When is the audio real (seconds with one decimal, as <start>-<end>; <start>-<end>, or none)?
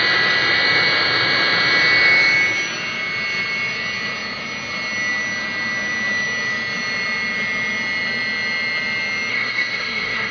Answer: 0.0-9.3